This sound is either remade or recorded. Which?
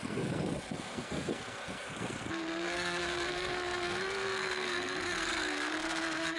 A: remade